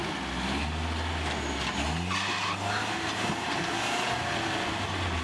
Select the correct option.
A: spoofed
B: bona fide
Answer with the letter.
B